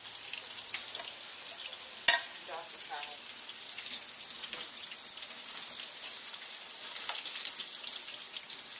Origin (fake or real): real